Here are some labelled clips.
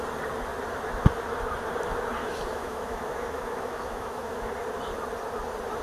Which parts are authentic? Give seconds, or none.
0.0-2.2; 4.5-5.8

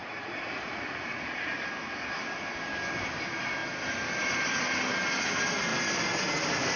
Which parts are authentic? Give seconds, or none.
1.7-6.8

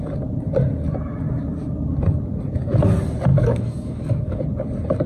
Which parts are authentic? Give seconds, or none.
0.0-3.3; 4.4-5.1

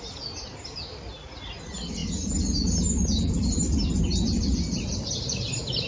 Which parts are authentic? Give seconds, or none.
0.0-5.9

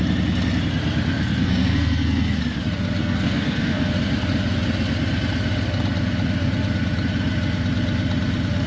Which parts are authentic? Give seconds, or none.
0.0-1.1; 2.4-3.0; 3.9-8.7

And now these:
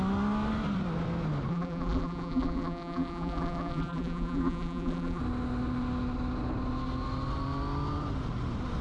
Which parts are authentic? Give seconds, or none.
0.0-1.5; 5.2-8.8

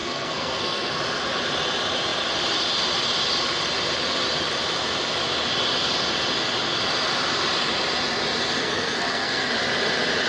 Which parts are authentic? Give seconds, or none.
0.9-8.6; 9.5-10.3